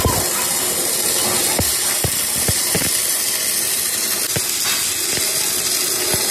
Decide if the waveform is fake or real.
real